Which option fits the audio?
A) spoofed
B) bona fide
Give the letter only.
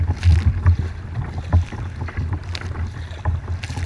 B